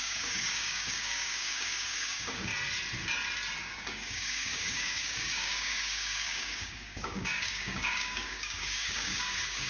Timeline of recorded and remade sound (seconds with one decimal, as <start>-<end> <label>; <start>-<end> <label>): 0.0-2.5 remade; 2.5-3.6 recorded; 3.6-9.7 remade